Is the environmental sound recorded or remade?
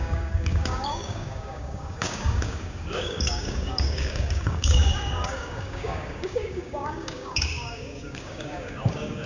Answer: remade